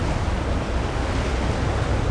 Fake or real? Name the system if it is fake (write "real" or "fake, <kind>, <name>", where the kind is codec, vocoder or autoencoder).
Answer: real